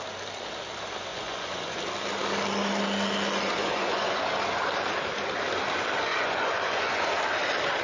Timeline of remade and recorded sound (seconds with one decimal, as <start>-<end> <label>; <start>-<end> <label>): 0.0-1.1 recorded; 1.1-1.8 remade; 1.8-3.6 recorded; 3.6-4.2 remade; 4.2-6.1 recorded; 6.1-7.1 remade; 7.1-7.8 recorded